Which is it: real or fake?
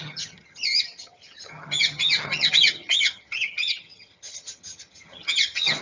fake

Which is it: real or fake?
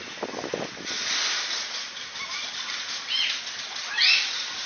real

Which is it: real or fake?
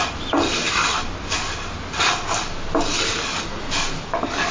real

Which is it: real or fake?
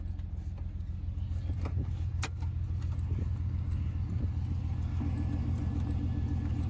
real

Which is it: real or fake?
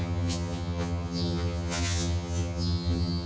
fake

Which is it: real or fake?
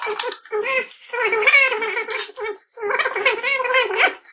real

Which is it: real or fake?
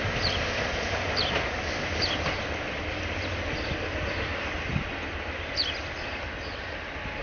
real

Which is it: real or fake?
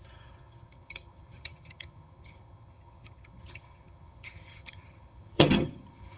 fake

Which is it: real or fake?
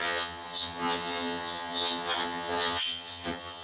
fake